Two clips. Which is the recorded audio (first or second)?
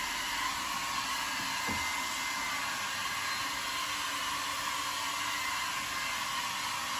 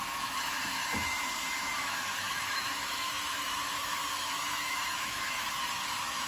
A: first